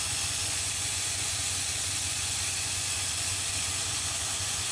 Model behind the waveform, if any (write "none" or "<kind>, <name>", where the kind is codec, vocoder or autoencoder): vocoder, Vocos